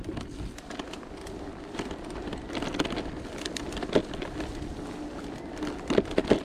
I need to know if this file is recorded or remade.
recorded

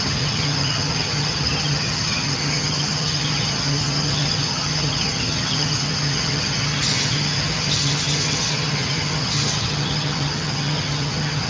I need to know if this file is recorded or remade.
remade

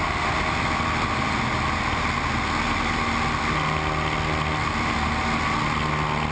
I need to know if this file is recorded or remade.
recorded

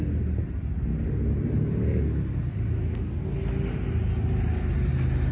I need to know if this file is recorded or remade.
recorded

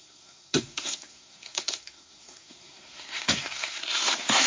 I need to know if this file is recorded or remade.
remade